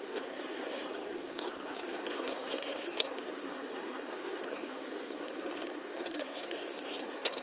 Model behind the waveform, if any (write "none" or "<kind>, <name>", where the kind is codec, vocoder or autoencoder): codec, SNAC